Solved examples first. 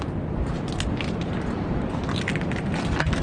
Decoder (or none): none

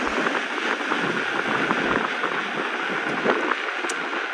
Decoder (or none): none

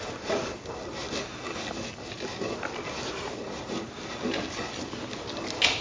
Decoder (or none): none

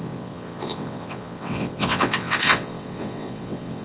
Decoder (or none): vocoder, WaveNeXt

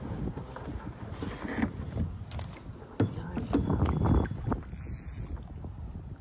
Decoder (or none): none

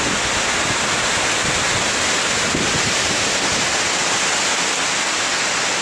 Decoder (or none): none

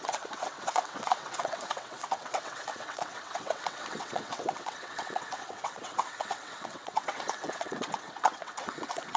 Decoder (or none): vocoder, WaveNeXt